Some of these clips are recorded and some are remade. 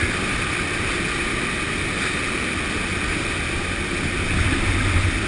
recorded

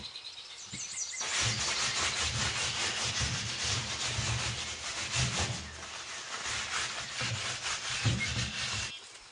recorded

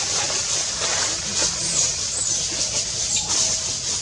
recorded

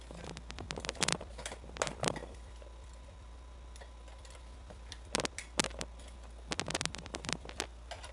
recorded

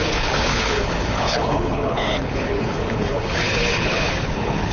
remade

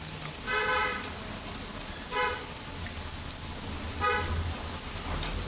recorded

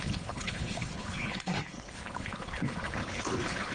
remade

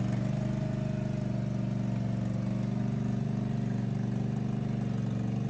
recorded